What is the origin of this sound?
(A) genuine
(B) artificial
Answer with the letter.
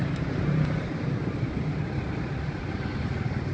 B